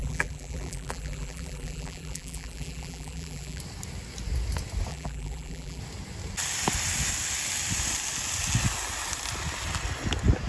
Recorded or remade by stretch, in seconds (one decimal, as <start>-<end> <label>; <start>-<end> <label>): 0.0-3.6 remade; 3.6-4.9 recorded; 4.9-5.8 remade; 5.8-10.5 recorded